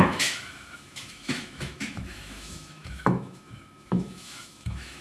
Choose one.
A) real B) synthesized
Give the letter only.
B